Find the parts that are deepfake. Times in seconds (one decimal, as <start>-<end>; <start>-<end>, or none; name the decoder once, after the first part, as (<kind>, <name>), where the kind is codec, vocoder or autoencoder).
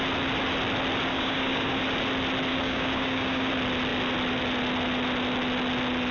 1.1-1.8 (codec, DAC); 2.5-3.5